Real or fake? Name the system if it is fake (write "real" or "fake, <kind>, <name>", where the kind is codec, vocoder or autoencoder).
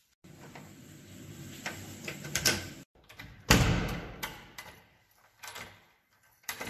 fake, vocoder, BigVGAN v2